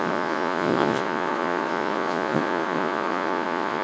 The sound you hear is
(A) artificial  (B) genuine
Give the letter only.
A